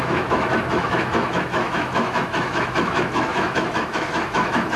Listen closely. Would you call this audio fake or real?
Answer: fake